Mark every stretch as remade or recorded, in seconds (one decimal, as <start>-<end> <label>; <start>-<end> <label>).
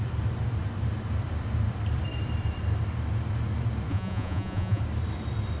0.0-3.9 recorded; 3.9-4.8 remade; 4.8-5.6 recorded